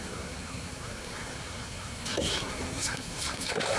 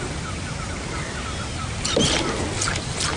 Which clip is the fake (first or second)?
first